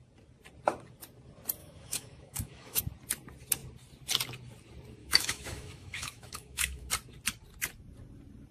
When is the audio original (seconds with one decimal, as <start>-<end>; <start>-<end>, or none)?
0.0-1.6; 2.8-5.0; 6.9-8.5

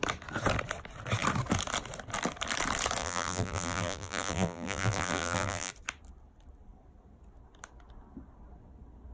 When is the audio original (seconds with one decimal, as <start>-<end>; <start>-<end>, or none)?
0.0-3.0; 5.7-9.1

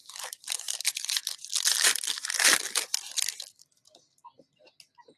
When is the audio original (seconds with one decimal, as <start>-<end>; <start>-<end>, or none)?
0.7-5.2

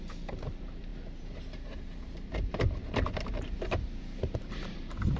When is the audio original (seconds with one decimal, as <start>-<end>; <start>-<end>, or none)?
none

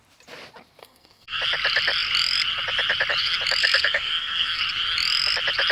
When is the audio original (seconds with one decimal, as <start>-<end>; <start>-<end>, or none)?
0.0-0.8; 1.4-3.6; 4.6-5.7

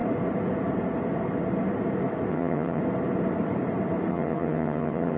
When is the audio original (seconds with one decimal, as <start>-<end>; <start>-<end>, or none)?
0.0-2.3; 2.8-4.1